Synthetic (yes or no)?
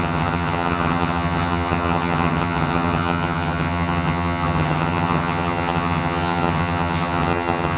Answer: yes